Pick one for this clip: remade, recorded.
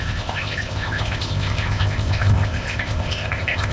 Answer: remade